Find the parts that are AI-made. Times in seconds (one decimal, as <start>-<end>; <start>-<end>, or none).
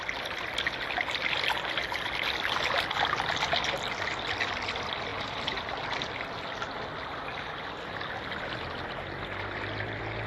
5.1-5.7